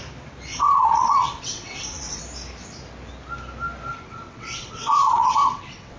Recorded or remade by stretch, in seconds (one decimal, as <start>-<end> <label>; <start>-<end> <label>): 0.0-0.5 recorded; 0.5-2.2 remade; 2.2-3.9 recorded; 3.9-6.0 remade